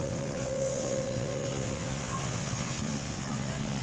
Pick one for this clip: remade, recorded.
remade